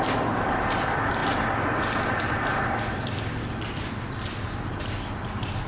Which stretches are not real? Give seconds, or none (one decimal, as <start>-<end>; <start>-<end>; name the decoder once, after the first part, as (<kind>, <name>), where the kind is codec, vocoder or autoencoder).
none